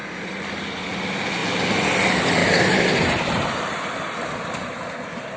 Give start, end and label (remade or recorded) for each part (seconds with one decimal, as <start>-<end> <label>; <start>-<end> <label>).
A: 0.0-0.6 remade; 0.6-2.4 recorded; 2.4-3.8 remade; 3.8-5.4 recorded

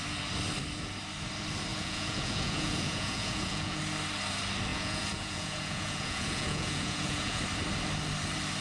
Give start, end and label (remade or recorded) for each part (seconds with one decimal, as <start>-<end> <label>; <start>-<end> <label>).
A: 0.0-1.7 recorded; 1.7-3.8 remade; 3.8-4.7 recorded; 4.7-7.4 remade; 7.4-8.6 recorded

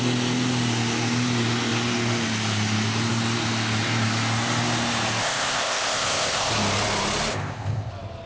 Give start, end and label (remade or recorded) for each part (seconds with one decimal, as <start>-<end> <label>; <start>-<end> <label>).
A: 0.0-5.2 recorded; 5.2-6.5 remade; 6.5-7.3 recorded; 7.3-7.9 remade; 7.9-8.3 recorded

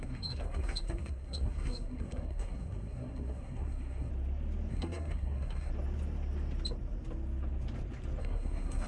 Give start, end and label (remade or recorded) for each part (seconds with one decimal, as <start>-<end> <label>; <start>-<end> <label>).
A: 0.0-4.1 remade; 4.1-4.7 recorded; 4.7-5.7 remade; 5.7-8.2 recorded; 8.2-8.9 remade

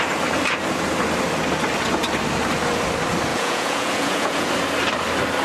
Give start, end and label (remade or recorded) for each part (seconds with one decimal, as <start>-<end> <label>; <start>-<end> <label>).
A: 0.0-3.3 recorded; 3.3-4.5 remade; 4.5-5.4 recorded

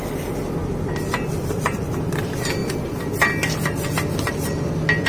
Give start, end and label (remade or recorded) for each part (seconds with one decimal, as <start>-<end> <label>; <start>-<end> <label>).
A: 0.0-0.6 recorded; 0.6-2.2 remade; 2.2-5.1 recorded